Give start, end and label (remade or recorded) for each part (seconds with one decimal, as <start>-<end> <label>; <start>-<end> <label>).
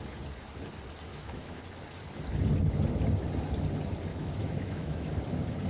0.0-1.1 recorded; 1.1-1.6 remade; 1.6-4.1 recorded; 4.1-5.1 remade; 5.1-5.7 recorded